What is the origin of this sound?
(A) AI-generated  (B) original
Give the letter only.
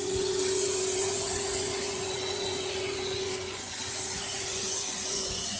A